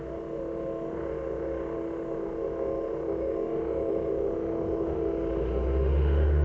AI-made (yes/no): yes